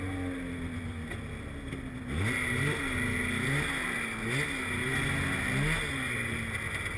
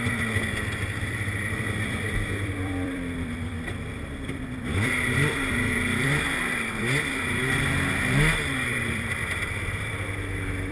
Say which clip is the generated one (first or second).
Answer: second